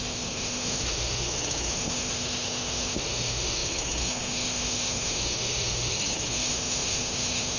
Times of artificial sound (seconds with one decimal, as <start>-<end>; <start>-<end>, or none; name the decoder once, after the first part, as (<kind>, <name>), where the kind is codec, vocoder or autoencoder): 0.0-7.6 (autoencoder, DAC-VAE)

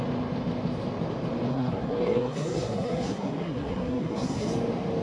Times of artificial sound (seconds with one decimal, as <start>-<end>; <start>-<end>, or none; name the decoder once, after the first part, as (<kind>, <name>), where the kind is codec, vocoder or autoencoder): 1.5-4.5 (codec, SNAC)

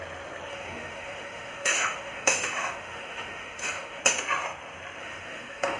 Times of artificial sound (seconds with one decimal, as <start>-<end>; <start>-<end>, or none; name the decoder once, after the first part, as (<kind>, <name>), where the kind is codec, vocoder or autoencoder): 0.5-4.0 (autoencoder, DAC-VAE); 5.0-5.8

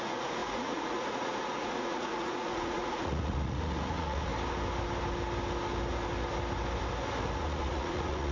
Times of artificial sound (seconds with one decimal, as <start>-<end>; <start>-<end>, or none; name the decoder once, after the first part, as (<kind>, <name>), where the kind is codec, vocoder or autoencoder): 0.0-4.3 (vocoder, Vocos); 7.4-8.3

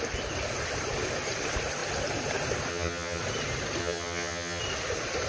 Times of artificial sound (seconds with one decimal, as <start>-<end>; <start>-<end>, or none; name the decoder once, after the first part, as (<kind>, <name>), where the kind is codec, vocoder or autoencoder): 2.7-3.2 (vocoder, HiFi-GAN); 3.8-4.6

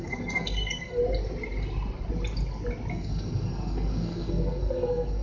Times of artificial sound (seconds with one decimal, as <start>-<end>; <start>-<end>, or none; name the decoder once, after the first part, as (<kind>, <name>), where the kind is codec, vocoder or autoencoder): 0.0-1.0 (codec, SNAC); 2.9-5.2